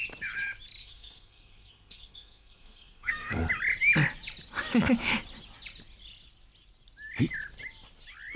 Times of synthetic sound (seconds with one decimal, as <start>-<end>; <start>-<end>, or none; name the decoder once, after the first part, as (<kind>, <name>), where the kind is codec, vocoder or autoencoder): 0.8-3.5 (codec, SNAC)